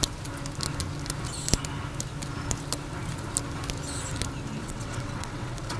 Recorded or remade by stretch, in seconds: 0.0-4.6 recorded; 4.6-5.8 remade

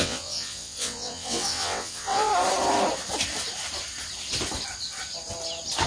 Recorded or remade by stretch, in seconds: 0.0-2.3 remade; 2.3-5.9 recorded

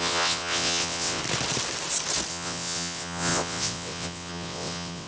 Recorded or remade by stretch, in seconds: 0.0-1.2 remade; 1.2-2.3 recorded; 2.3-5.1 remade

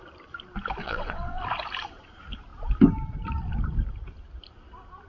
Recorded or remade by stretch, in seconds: 0.0-0.8 recorded; 0.8-1.4 remade; 1.4-5.1 recorded

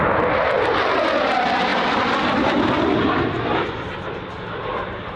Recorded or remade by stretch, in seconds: 0.0-5.2 recorded

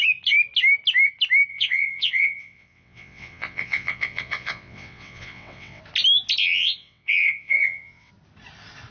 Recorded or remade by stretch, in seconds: 0.0-1.5 recorded; 1.5-5.8 remade; 5.8-6.4 recorded; 6.4-8.1 remade; 8.1-8.9 recorded

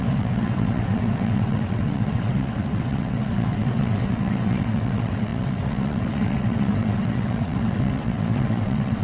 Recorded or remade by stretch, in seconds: 0.0-9.0 remade